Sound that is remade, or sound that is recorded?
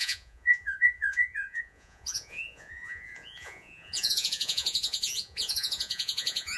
remade